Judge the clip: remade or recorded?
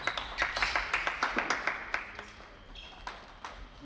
recorded